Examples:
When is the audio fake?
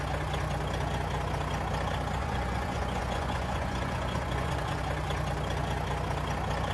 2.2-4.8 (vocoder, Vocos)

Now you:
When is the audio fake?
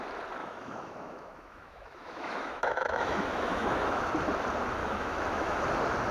0.4-4.1 (autoencoder, DAC-VAE); 4.8-5.6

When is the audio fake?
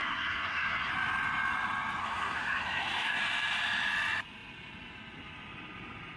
0.0-0.9 (codec, SNAC); 2.0-3.2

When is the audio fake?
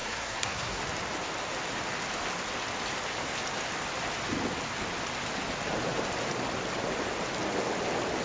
0.0-0.8 (codec, SNAC)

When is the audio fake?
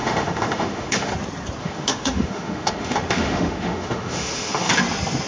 0.0-1.1 (autoencoder, DAC-VAE); 1.6-4.8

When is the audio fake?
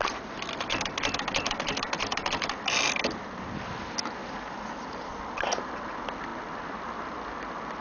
none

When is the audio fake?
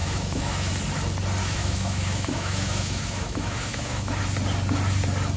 0.0-0.7 (autoencoder, DAC-VAE); 1.4-4.1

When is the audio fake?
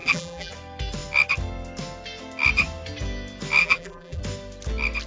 0.0-0.5 (vocoder, BigVGAN v2); 3.6-4.2